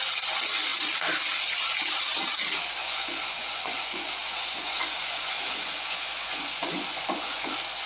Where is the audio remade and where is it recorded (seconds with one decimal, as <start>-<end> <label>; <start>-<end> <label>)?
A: 0.0-2.8 recorded; 2.8-7.5 remade; 7.5-7.9 recorded